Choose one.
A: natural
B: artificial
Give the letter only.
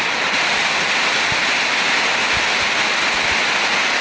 A